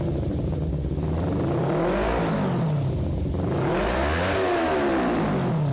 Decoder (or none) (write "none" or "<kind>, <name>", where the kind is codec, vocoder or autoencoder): none